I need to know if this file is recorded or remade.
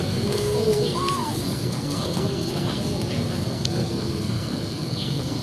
remade